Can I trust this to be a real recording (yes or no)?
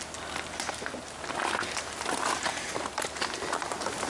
yes